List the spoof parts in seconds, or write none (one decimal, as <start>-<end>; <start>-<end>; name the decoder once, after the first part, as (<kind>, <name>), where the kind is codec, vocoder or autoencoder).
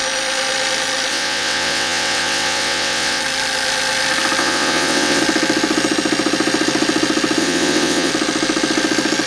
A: 1.1-3.2 (vocoder, WaveNeXt); 4.4-5.2; 7.4-8.1